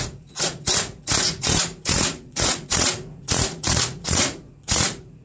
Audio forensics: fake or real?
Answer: fake